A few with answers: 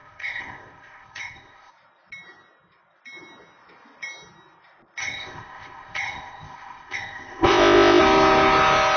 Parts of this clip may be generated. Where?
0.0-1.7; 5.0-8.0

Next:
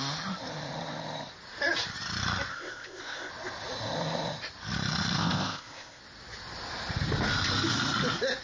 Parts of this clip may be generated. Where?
2.5-3.3; 5.2-6.0

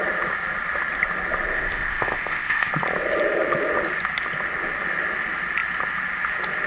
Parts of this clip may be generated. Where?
1.5-2.7

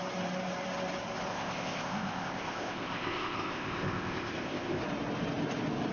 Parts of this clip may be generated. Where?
1.3-4.8

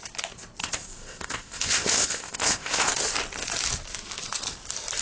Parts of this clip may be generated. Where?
0.6-2.9

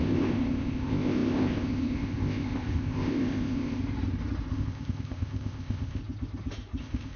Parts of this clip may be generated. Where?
0.0-3.8; 4.5-6.0; 6.8-7.2

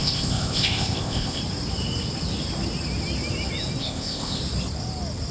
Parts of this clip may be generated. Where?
0.0-1.4; 3.8-4.4